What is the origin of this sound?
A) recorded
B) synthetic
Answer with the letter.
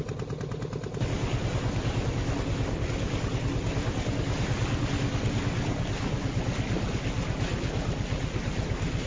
A